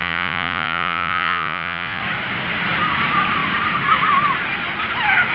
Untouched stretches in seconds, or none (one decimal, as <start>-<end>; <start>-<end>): 2.0-5.3